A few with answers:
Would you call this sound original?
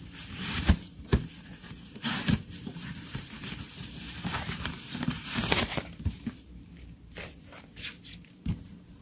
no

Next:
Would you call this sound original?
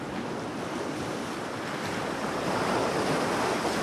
yes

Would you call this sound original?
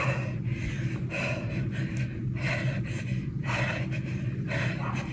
yes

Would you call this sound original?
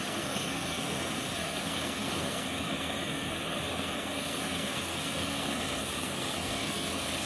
no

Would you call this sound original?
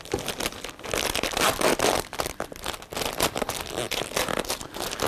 yes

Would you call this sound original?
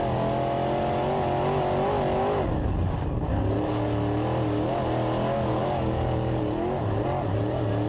yes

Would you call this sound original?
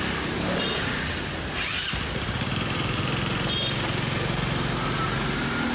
no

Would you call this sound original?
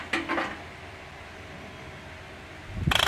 yes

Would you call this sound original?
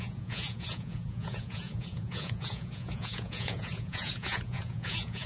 no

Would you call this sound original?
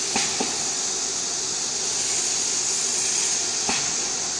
yes